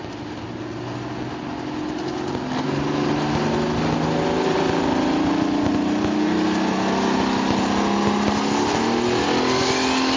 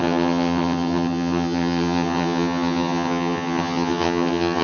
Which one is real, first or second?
first